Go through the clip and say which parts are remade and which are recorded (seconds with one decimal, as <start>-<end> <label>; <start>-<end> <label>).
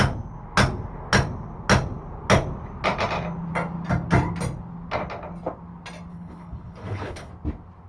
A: 0.0-6.1 recorded; 6.1-7.3 remade; 7.3-7.9 recorded